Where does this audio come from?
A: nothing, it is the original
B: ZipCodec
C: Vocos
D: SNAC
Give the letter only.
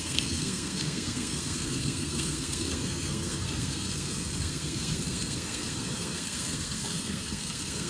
D